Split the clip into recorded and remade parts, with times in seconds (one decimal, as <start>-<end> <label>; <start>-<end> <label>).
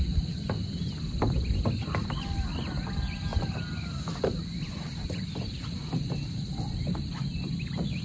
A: 0.0-8.0 recorded